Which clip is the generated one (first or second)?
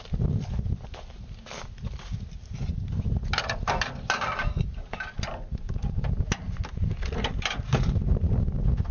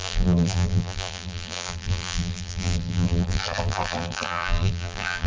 second